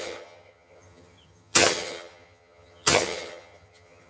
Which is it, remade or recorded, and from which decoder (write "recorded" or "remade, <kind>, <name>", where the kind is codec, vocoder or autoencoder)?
remade, vocoder, HiFi-GAN